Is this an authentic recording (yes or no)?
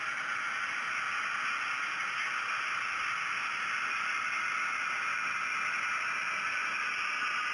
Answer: yes